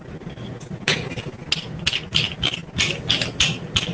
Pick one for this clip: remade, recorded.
recorded